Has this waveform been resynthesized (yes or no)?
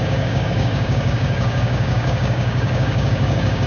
yes